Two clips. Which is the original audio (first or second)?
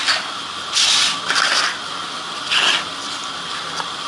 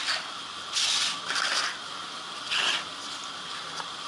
first